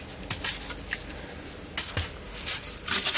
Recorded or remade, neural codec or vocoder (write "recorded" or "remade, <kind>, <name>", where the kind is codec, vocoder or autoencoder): recorded